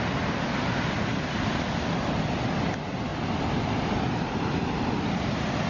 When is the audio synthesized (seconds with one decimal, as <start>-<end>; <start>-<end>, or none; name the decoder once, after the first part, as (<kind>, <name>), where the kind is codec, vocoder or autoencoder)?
none